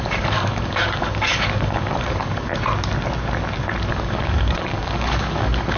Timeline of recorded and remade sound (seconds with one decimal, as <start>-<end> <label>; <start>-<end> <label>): 0.0-2.5 remade; 2.5-3.9 recorded; 3.9-5.8 remade